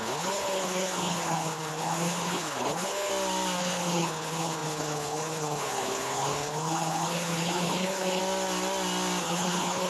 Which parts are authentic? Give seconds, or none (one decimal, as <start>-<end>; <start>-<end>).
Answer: 3.1-3.6; 8.2-9.2